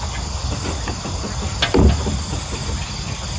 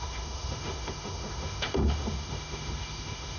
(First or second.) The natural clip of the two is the first